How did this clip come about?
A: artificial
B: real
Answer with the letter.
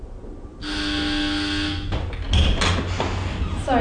B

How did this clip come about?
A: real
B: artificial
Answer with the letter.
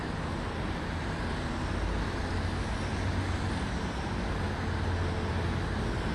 A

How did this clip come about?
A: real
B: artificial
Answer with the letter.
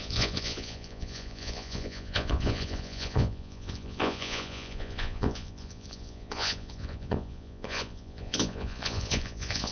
B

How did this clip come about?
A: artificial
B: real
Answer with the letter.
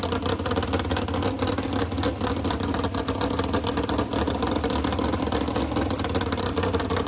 B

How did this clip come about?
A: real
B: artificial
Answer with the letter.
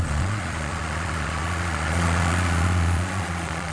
B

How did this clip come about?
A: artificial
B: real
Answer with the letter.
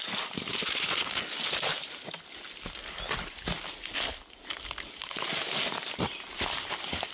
B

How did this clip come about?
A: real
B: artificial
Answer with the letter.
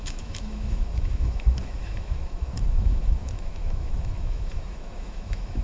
B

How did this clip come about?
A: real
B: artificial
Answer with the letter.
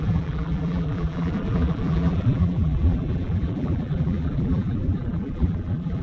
B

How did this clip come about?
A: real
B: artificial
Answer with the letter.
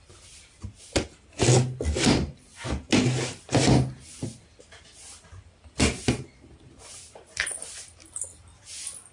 A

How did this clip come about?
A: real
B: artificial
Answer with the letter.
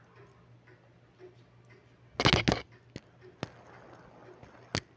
A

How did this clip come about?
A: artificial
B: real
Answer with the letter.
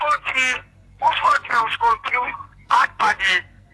A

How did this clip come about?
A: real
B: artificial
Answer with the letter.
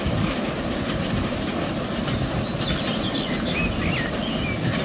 A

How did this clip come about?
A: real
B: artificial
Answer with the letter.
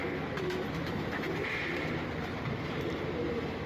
A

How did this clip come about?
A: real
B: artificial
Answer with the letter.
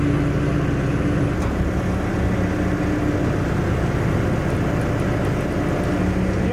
A